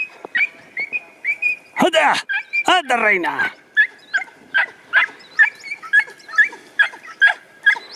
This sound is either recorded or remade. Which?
recorded